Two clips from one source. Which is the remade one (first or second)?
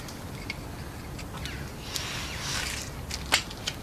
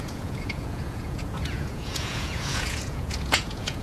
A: second